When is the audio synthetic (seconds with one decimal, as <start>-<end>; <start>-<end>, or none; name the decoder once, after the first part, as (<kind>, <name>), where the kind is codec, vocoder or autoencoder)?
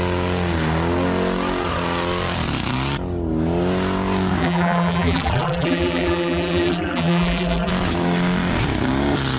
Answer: 4.4-7.7 (vocoder, BigVGAN v2)